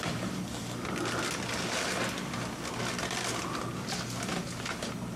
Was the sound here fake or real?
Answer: real